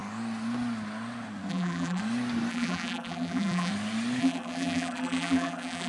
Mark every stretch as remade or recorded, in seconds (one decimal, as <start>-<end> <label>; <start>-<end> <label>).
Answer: 0.0-1.5 recorded; 1.5-2.0 remade; 2.0-2.5 recorded; 2.5-3.7 remade; 3.7-4.2 recorded; 4.2-5.9 remade